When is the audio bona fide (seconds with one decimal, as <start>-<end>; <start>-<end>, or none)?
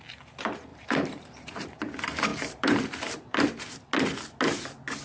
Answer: 0.0-0.7; 1.8-2.3; 3.6-5.0